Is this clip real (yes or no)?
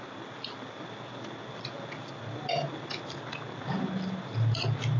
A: yes